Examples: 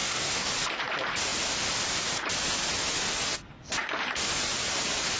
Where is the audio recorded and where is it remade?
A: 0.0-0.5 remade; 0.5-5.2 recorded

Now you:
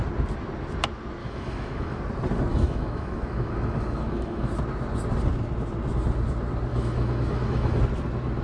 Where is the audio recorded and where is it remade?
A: 0.0-1.2 recorded; 1.2-2.0 remade; 2.0-2.5 recorded; 2.5-4.5 remade; 4.5-6.7 recorded; 6.7-7.8 remade; 7.8-8.4 recorded